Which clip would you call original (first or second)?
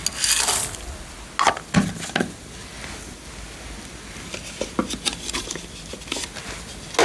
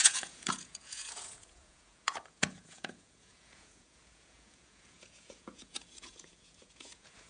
first